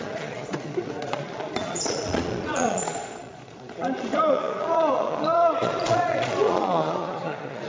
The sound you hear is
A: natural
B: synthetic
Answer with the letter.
B